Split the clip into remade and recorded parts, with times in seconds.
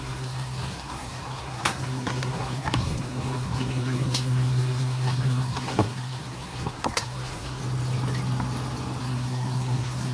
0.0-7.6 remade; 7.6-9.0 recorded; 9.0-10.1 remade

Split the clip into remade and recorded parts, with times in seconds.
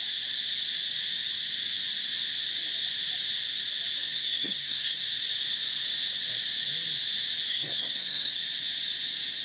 0.0-4.0 recorded; 4.0-5.0 remade; 5.0-7.5 recorded; 7.5-8.4 remade; 8.4-9.4 recorded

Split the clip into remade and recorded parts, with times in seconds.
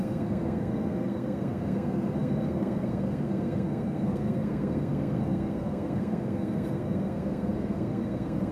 0.0-8.5 remade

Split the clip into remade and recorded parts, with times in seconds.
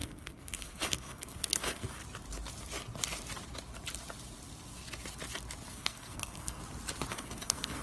0.0-2.0 remade; 2.0-5.7 recorded; 5.7-6.6 remade; 6.6-7.1 recorded; 7.1-7.8 remade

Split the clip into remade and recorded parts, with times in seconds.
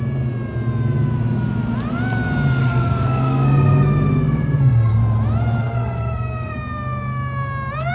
0.0-2.6 recorded; 2.6-5.0 remade; 5.0-5.6 recorded; 5.6-6.6 remade; 6.6-7.9 recorded